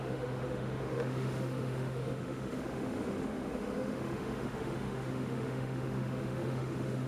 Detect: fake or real fake